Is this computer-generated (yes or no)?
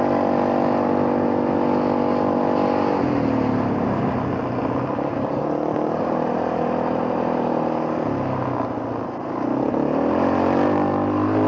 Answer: no